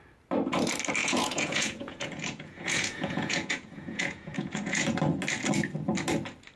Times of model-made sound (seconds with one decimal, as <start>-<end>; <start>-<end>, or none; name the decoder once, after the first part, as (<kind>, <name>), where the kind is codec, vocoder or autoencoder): 1.0-5.0 (vocoder, Vocos)